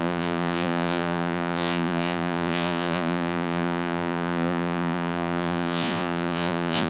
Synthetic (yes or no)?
yes